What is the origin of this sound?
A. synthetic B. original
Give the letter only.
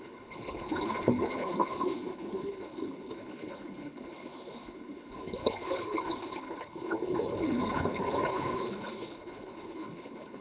A